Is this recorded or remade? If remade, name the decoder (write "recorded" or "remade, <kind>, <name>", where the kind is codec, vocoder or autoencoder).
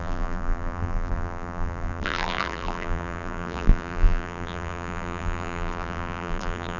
remade, vocoder, BigVGAN v2